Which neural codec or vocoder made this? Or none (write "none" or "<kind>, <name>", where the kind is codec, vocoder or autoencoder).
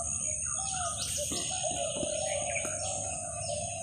none